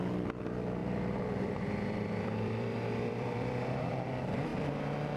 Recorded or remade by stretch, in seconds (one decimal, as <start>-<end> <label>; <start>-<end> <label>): 0.0-0.8 recorded; 0.8-3.9 remade; 3.9-5.2 recorded